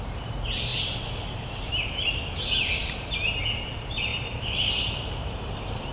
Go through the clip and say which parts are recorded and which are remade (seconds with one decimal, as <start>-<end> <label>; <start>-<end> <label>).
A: 0.0-0.7 recorded; 0.7-2.1 remade; 2.1-2.8 recorded; 2.8-3.4 remade; 3.4-4.1 recorded; 4.1-5.9 remade